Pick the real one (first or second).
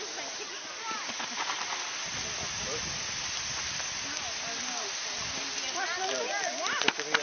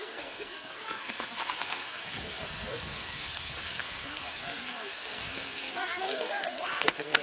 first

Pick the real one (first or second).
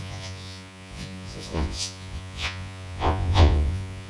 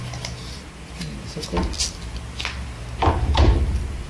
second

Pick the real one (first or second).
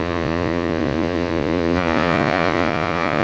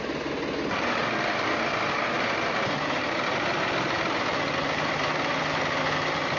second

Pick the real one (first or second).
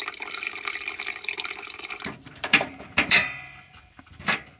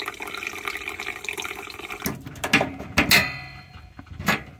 second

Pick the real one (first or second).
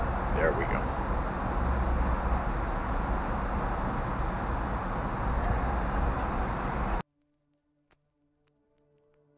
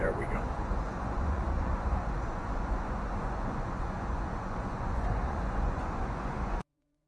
first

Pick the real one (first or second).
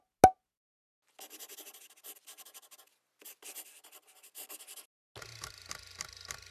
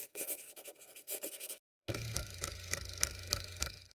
first